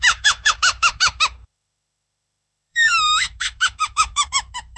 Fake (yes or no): yes